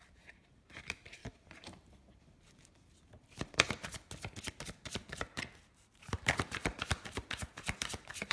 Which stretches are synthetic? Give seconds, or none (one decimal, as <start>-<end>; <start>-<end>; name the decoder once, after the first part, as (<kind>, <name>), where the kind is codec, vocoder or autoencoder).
0.0-1.2 (vocoder, BigVGAN v2); 4.5-8.3